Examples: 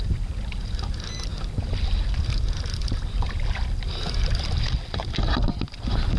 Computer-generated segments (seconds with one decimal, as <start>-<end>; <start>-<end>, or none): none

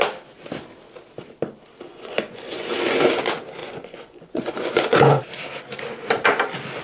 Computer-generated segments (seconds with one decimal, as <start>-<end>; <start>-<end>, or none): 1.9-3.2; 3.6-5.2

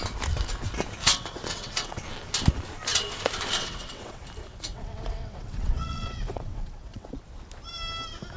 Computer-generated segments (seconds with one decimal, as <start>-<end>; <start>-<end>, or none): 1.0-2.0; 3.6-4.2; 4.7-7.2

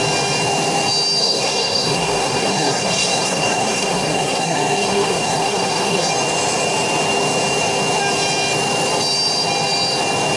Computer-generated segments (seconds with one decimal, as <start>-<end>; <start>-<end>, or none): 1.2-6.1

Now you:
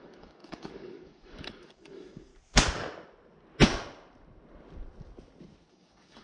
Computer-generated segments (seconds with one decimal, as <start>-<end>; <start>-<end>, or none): 0.0-2.3; 5.7-6.2

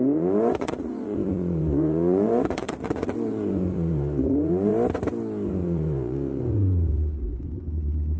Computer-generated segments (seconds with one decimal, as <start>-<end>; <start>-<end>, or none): 0.0-4.7; 5.6-8.2

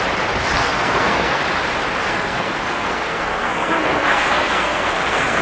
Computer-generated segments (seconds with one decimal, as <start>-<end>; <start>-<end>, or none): 0.6-1.4; 2.0-5.4